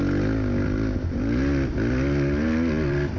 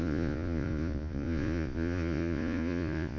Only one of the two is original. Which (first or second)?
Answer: first